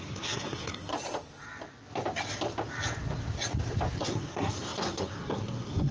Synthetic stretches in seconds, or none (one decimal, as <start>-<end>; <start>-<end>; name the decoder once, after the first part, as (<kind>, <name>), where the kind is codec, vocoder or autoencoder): 0.0-0.9 (codec, SNAC); 4.0-5.9